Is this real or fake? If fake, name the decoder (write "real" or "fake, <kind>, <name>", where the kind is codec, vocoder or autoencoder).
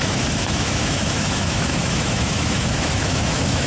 fake, autoencoder, DAC-VAE